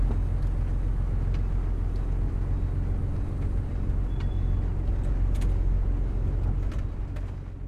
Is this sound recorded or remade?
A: recorded